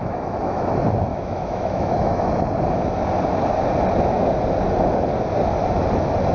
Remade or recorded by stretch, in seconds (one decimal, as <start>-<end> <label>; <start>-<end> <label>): 0.0-0.6 remade; 0.6-1.1 recorded; 1.1-2.3 remade; 2.3-6.3 recorded